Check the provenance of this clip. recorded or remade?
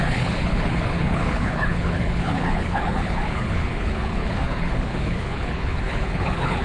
remade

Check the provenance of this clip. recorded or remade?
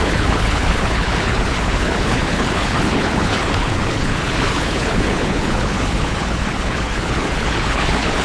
remade